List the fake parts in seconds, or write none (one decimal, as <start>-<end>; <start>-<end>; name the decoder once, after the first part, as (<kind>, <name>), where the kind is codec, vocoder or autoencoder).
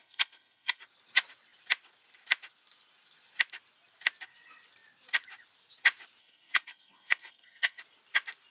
0.0-0.8 (codec, SNAC); 6.2-7.8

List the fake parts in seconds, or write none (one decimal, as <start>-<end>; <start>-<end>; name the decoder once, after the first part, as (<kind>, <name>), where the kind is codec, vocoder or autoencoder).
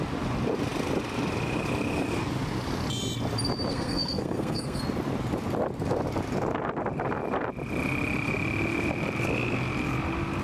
3.7-4.8 (codec, SNAC)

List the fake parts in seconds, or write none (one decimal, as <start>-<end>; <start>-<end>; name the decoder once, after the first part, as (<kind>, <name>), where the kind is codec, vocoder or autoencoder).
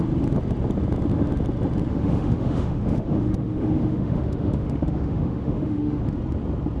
1.9-6.0 (autoencoder, DAC-VAE)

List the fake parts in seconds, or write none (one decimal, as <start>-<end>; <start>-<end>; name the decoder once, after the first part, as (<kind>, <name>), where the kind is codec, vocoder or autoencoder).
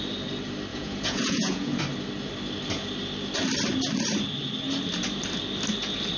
0.7-1.8 (vocoder, Vocos)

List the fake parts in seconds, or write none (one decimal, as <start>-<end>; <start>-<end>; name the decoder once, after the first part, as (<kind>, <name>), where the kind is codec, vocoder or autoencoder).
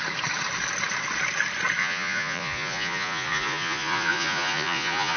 1.8-5.2 (vocoder, Vocos)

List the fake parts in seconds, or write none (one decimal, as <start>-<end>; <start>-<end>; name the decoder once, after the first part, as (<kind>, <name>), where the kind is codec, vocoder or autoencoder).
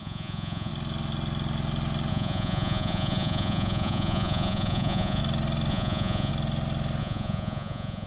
0.0-0.7 (vocoder, Vocos); 2.1-5.2; 5.7-6.3; 7.0-8.1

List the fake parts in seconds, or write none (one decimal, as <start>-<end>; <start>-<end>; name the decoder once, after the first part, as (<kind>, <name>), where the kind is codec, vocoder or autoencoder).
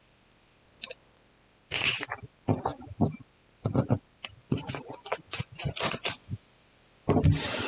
4.4-6.4 (vocoder, Vocos)